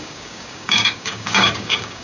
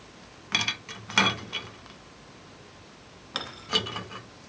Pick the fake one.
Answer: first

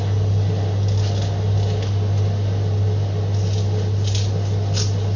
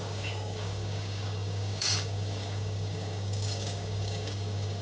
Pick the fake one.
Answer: second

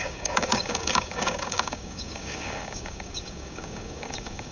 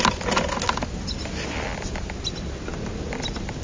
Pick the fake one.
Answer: first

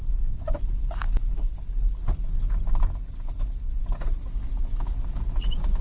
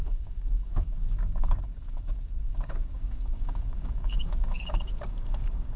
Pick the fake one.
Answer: second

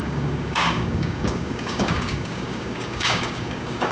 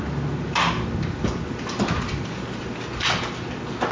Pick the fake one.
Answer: first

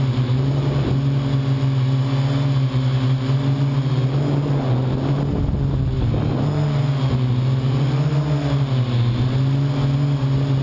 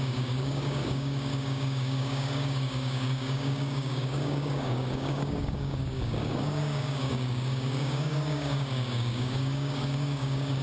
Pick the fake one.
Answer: second